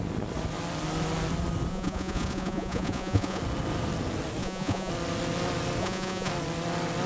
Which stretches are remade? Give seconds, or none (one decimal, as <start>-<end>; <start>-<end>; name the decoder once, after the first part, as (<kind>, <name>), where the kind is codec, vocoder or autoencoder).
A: 1.7-3.4 (vocoder, Vocos); 4.4-4.9; 5.8-6.3